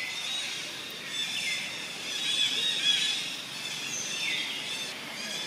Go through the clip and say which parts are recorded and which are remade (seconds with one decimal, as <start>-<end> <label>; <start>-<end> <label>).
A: 0.0-5.5 recorded